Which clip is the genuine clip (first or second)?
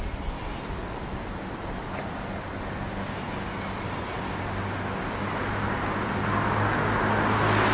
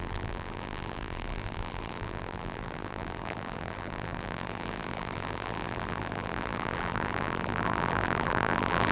first